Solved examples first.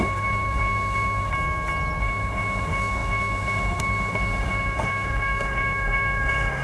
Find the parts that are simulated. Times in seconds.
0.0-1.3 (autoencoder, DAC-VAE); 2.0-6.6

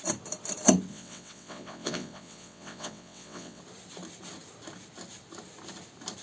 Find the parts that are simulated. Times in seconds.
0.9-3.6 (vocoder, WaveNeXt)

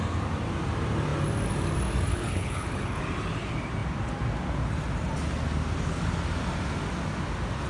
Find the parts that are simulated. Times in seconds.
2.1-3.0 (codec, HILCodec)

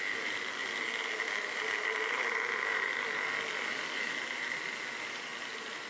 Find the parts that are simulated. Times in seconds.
none